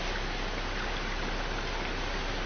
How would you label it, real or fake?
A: real